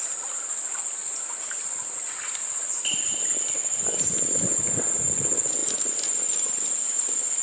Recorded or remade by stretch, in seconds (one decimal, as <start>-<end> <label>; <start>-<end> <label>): 0.0-7.4 recorded